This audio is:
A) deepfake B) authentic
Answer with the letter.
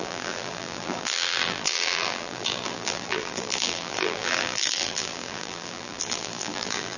A